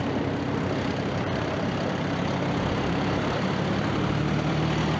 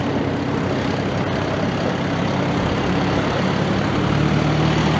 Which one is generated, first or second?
first